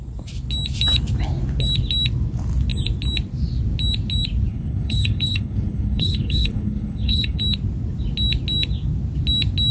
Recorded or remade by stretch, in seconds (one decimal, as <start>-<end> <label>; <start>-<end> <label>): 0.0-4.5 recorded; 4.5-7.4 remade; 7.4-9.7 recorded

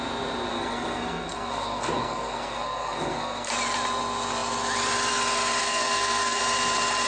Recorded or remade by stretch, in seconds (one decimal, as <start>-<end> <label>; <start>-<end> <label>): 0.0-0.5 recorded; 0.5-3.5 remade; 3.5-5.6 recorded; 5.6-6.4 remade; 6.4-7.1 recorded

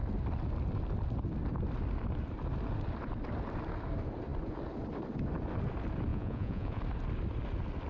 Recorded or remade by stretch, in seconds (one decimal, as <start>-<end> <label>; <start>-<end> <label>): 0.0-6.1 recorded; 6.1-6.8 remade; 6.8-7.9 recorded

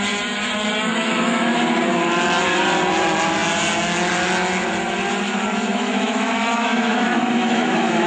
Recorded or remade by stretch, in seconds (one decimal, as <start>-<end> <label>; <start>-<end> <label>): 0.0-0.9 recorded; 0.9-1.6 remade; 1.6-5.7 recorded; 5.7-8.1 remade

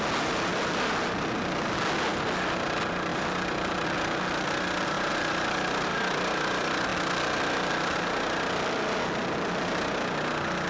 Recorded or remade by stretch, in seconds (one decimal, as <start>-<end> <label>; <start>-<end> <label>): 0.0-10.7 recorded

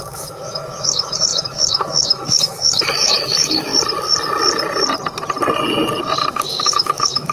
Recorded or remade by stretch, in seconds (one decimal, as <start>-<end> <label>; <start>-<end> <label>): 0.0-3.7 remade; 3.7-6.3 recorded; 6.3-7.3 remade

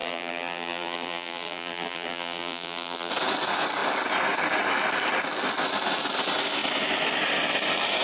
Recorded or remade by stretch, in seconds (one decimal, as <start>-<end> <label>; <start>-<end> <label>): 0.0-3.1 remade; 3.1-8.0 recorded